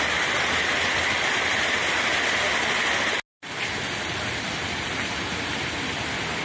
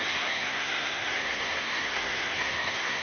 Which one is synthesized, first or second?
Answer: second